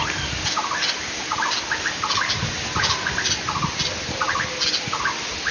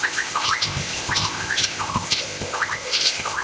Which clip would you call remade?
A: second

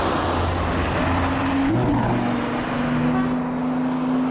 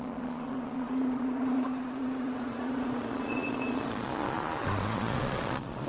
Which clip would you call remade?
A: second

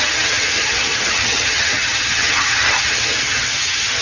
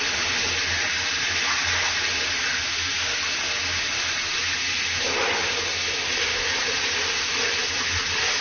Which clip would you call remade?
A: first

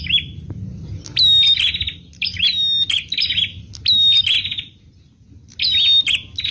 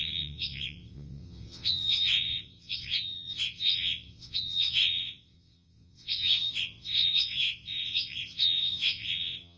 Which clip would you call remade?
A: second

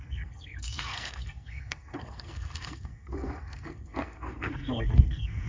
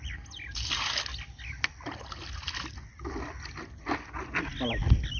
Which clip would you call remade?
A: first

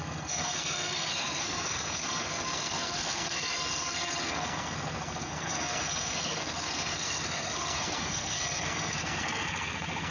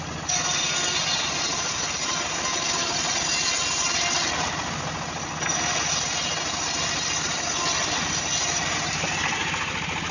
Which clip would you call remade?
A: first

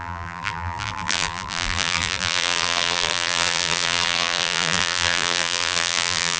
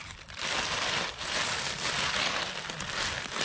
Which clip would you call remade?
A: first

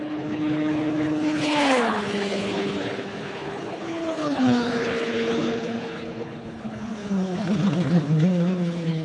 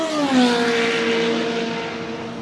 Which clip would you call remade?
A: first